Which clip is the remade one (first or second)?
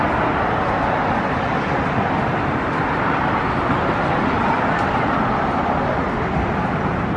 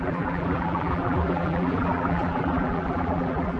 second